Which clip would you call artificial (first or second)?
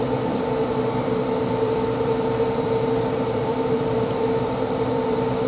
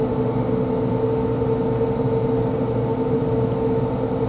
first